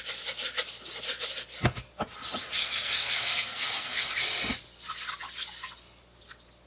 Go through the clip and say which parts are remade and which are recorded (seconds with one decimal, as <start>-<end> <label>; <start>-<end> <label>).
0.0-2.6 recorded; 2.6-4.1 remade; 4.1-6.7 recorded